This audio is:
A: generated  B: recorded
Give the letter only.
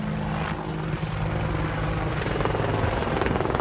B